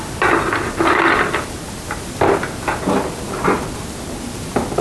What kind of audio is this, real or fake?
real